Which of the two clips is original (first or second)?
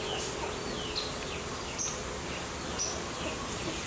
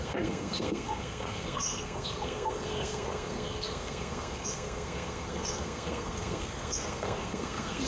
first